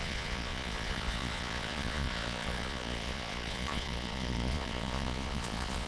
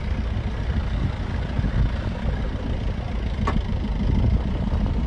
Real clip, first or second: second